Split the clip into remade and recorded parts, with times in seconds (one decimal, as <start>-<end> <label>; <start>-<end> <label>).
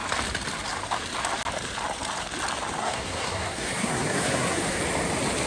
0.0-2.8 recorded; 2.8-4.8 remade; 4.8-5.5 recorded